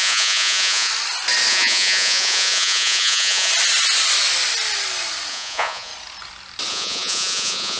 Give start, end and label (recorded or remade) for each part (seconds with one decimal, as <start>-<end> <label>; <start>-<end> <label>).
0.0-0.9 remade; 0.9-1.5 recorded; 1.5-3.5 remade; 3.5-5.3 recorded; 5.3-5.9 remade; 5.9-6.7 recorded; 6.7-7.8 remade